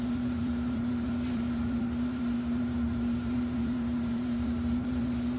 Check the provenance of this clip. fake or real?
fake